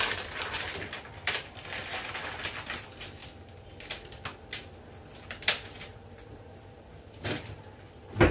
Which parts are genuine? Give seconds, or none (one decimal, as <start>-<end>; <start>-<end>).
0.0-8.3